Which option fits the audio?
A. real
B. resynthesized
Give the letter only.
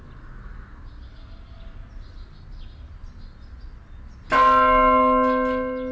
A